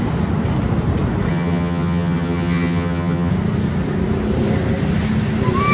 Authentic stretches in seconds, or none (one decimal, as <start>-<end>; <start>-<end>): 0.0-1.3; 3.3-5.7